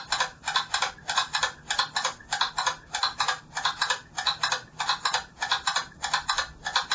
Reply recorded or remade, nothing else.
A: recorded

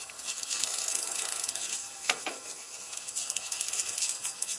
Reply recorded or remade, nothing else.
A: remade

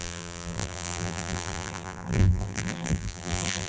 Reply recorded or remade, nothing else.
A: remade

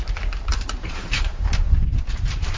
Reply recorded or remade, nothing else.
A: remade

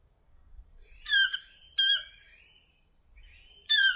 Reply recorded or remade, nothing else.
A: remade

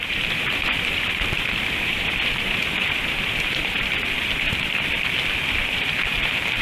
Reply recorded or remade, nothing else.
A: remade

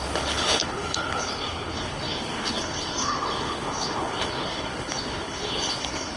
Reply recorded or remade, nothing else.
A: remade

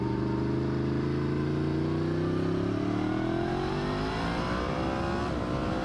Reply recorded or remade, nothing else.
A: recorded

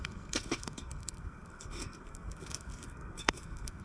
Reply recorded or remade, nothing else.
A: remade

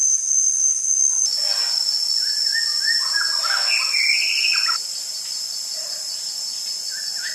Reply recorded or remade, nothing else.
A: recorded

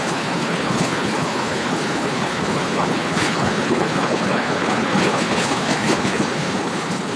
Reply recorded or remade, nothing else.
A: remade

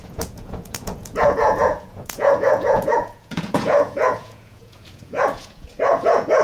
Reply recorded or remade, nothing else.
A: remade